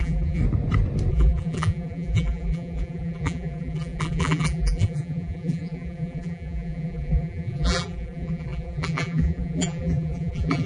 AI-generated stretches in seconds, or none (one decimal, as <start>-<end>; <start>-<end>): 0.0-0.4; 1.1-10.7

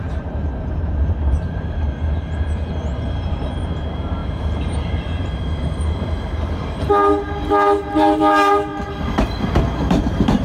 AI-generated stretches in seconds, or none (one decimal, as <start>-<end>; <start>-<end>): 0.0-8.7; 9.6-10.4

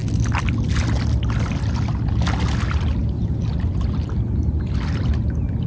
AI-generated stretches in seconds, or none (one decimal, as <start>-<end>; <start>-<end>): none

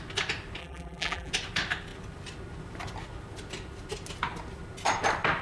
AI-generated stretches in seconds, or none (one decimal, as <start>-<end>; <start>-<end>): 0.6-1.3

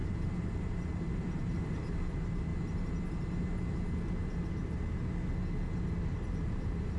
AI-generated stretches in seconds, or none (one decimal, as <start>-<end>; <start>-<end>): 0.0-2.5; 5.9-7.0